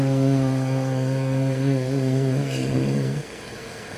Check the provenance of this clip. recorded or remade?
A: remade